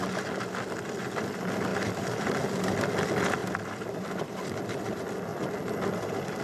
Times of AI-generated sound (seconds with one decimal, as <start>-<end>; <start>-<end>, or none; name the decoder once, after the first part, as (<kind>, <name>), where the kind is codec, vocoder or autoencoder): 1.7-2.2 (vocoder, BigVGAN v2); 3.4-4.2